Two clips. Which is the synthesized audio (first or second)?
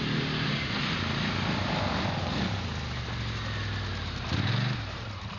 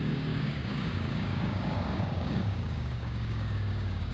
second